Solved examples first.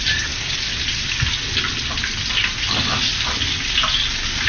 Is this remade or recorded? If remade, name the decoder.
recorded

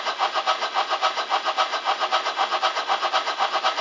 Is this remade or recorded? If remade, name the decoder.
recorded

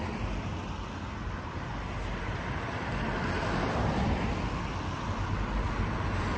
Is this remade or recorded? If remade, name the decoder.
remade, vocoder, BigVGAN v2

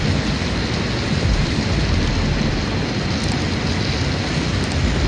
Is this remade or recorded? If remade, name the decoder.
recorded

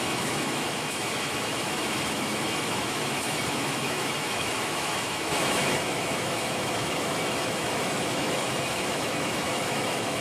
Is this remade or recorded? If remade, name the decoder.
remade, autoencoder, DAC-VAE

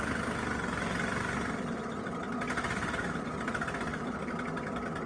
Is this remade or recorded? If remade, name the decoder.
recorded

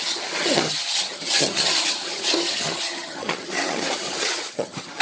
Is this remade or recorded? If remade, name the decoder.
remade, vocoder, HiFi-GAN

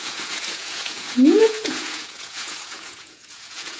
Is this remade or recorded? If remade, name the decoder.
remade, vocoder, Vocos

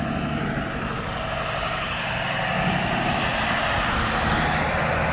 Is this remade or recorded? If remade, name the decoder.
recorded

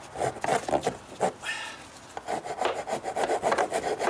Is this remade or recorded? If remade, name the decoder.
recorded